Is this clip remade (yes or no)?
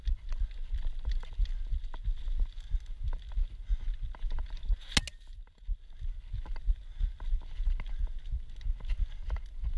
no